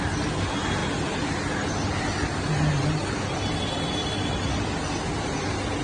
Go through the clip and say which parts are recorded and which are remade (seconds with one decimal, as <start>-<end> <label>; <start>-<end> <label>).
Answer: 0.0-5.8 recorded